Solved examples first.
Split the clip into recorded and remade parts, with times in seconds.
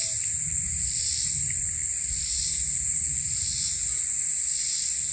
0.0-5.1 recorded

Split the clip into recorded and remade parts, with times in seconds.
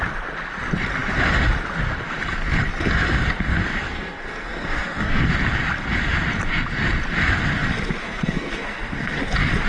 0.0-3.8 recorded; 3.8-5.3 remade; 5.3-8.0 recorded; 8.0-9.2 remade; 9.2-9.7 recorded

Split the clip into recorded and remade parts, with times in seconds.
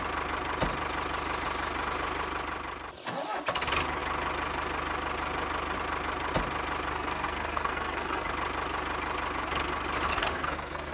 0.0-6.9 recorded; 6.9-8.3 remade; 8.3-10.1 recorded; 10.1-10.9 remade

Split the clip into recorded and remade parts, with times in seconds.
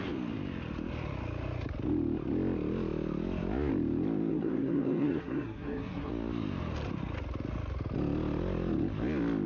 0.0-4.3 recorded; 4.3-6.1 remade; 6.1-9.5 recorded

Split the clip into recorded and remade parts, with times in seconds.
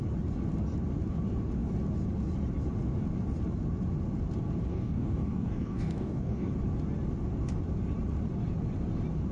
0.0-4.7 recorded; 4.7-6.5 remade; 6.5-9.3 recorded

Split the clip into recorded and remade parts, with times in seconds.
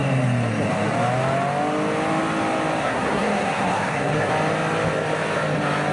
0.0-2.8 recorded; 2.8-4.3 remade; 4.3-5.9 recorded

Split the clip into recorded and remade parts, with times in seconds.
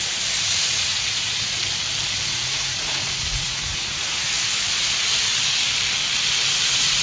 0.0-0.5 recorded; 0.5-1.6 remade; 1.6-2.3 recorded; 2.3-4.3 remade; 4.3-7.0 recorded